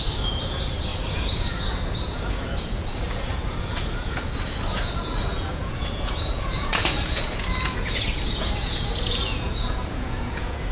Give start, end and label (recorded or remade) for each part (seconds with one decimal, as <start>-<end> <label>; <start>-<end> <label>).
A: 0.0-10.7 remade